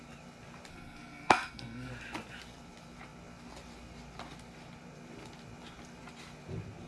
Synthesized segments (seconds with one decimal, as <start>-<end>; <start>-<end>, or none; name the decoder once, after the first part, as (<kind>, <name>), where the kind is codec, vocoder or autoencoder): 0.7-1.9 (codec, SNAC)